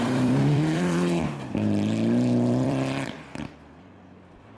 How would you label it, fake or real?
fake